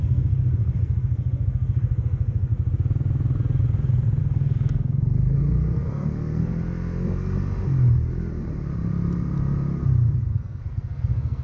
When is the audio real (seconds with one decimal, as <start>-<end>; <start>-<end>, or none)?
2.5-4.2; 6.5-10.1